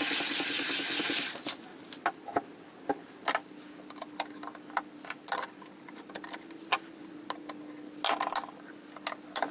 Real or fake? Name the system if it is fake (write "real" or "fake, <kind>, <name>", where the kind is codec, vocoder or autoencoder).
real